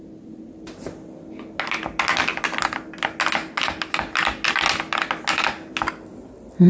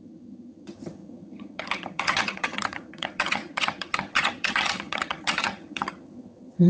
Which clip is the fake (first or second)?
second